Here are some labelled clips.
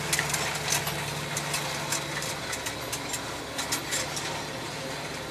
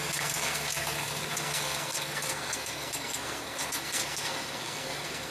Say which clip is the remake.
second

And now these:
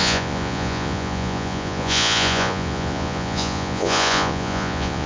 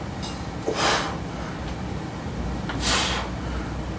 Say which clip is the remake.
first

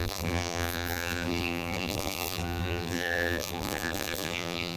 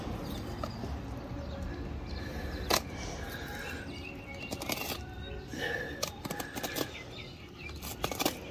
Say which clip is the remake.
first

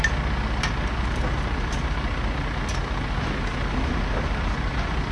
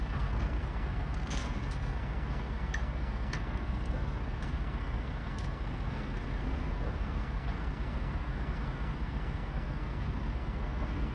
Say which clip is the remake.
second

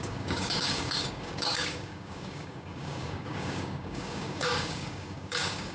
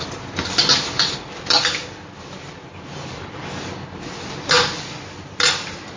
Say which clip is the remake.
first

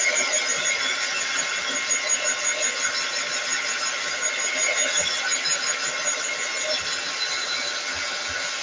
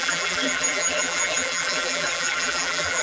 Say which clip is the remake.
second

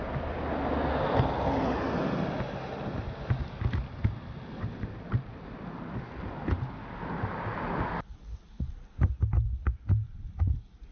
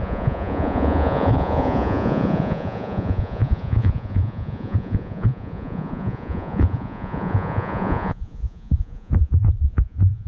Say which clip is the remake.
second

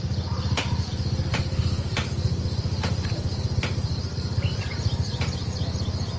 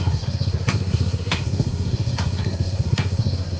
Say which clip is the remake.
second